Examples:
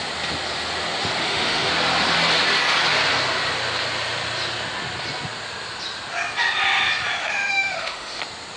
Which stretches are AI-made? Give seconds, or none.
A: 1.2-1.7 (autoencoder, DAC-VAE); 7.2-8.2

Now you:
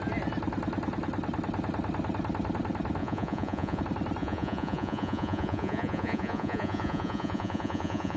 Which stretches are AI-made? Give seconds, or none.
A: 3.0-3.8 (vocoder, Vocos); 4.2-8.2

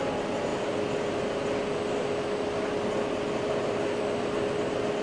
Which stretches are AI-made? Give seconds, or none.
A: none